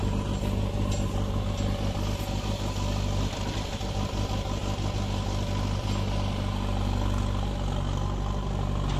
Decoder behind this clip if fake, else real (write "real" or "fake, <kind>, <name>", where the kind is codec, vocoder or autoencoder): real